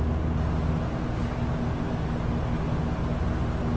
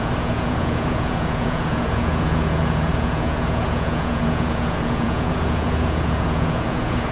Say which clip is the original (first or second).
first